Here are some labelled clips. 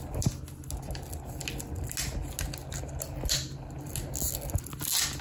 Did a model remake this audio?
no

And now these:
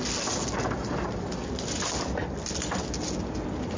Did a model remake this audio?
no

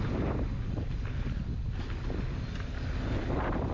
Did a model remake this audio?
no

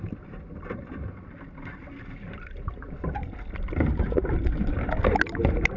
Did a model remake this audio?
no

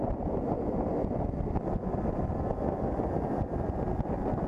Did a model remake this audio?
no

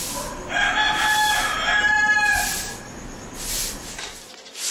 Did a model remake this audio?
no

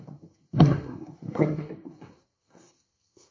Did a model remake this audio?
yes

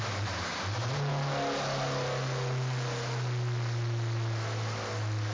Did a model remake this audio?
no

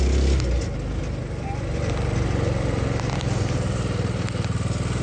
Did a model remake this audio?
no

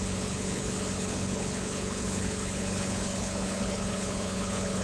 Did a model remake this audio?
yes